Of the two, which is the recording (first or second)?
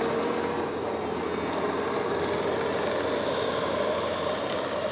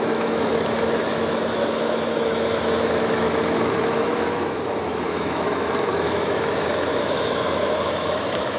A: first